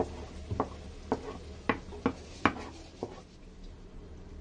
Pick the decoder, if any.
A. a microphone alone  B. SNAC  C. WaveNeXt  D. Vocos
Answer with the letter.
A